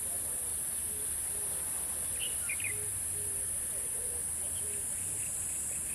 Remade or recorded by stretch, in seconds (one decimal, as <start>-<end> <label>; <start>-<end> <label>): 0.0-5.9 recorded